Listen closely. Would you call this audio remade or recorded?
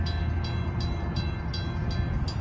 recorded